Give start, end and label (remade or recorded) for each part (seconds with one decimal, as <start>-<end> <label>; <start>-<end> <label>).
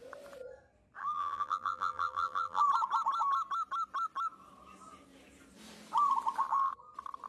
0.0-1.0 recorded; 1.0-2.6 remade; 2.6-7.3 recorded